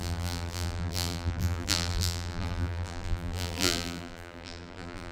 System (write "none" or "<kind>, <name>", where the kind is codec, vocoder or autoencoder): vocoder, BigVGAN v2